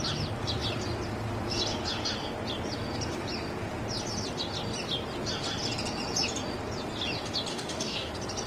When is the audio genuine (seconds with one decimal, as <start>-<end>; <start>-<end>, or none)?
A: 0.0-7.5; 8.1-8.5